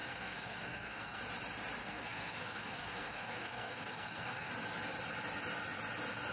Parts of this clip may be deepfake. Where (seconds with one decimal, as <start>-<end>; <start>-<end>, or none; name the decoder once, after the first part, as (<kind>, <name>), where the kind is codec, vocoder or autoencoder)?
0.0-1.2 (codec, SNAC); 1.8-4.5